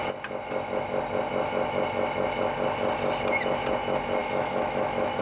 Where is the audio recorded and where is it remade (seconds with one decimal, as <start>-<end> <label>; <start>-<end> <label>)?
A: 0.0-4.2 recorded; 4.2-5.2 remade